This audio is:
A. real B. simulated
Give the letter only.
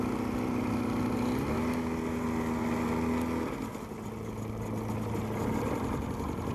A